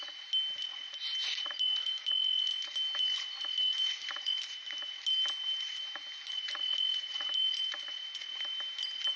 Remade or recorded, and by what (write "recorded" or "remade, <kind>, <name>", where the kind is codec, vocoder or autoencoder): recorded